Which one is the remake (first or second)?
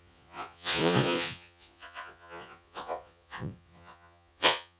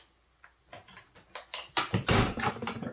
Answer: first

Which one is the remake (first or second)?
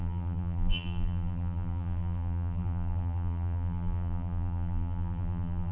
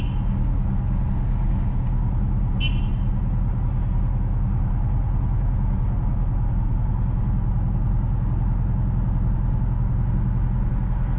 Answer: first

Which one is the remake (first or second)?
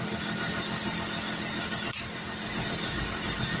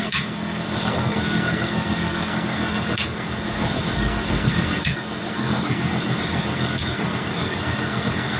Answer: second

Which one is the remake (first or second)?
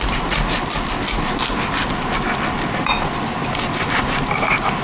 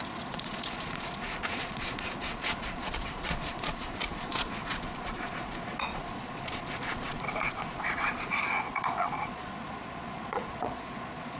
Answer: second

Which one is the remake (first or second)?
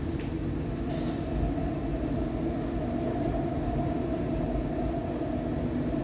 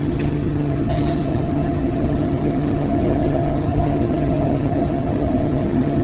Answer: second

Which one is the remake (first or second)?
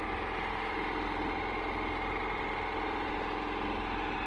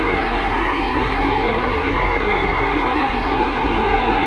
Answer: second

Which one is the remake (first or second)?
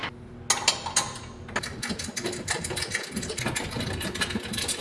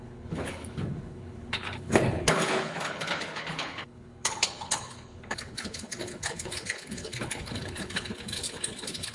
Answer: second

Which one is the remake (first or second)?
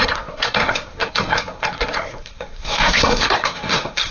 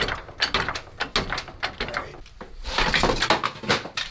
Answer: first